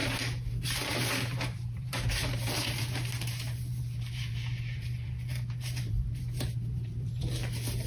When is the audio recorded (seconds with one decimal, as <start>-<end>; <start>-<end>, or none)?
none